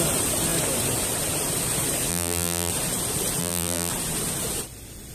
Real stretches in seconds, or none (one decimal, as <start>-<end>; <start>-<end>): 0.0-2.1; 2.7-3.4; 3.9-5.1